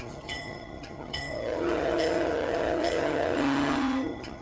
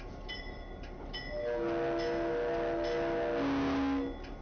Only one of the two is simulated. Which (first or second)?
first